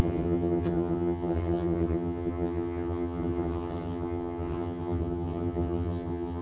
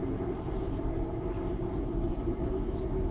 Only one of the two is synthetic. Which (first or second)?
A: first